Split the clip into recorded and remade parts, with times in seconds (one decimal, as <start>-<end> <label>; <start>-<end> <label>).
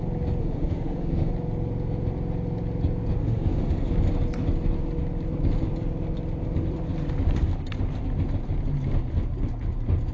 0.0-0.4 recorded; 0.4-1.3 remade; 1.3-3.2 recorded; 3.2-3.9 remade; 3.9-10.1 recorded